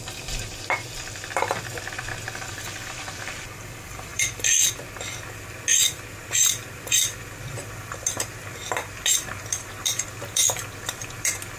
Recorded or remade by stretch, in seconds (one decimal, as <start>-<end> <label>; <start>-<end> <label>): 0.0-11.6 remade